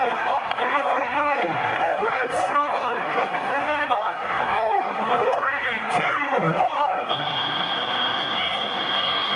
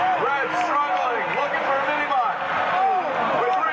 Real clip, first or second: second